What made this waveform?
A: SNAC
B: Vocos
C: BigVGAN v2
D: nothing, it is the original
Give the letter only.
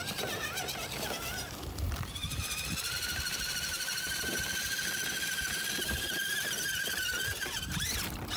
C